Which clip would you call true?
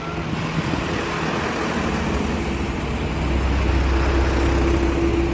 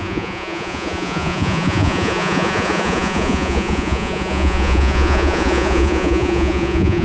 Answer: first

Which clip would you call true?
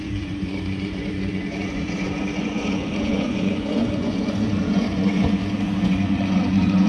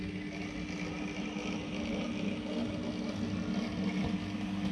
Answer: second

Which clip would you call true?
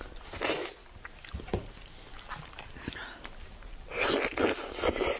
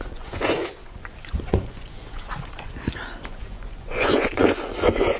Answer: first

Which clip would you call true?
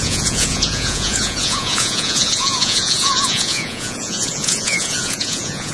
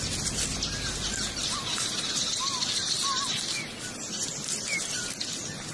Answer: second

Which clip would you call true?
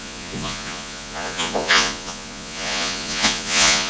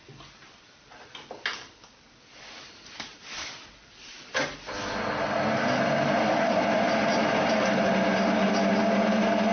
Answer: second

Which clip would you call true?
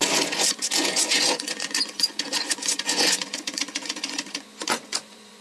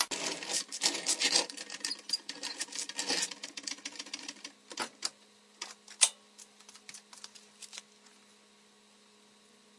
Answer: second